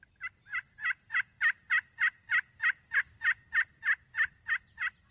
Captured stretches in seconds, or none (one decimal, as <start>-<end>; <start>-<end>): 0.0-5.1